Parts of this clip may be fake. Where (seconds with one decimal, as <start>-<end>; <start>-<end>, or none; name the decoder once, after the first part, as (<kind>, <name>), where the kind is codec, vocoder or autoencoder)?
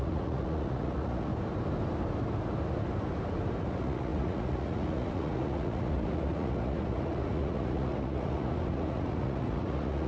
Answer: 0.0-1.3 (vocoder, Vocos); 3.6-10.1